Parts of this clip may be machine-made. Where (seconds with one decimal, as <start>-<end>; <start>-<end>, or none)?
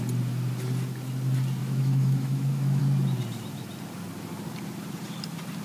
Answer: 1.6-2.8